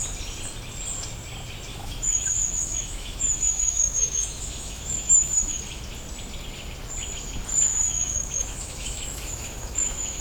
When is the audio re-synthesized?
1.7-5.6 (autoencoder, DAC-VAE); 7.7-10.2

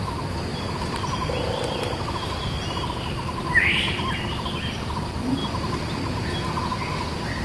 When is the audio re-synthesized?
0.5-4.1 (vocoder, BigVGAN v2); 5.4-6.3

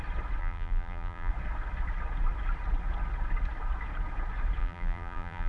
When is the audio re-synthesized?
0.4-1.3 (vocoder, BigVGAN v2); 4.6-5.5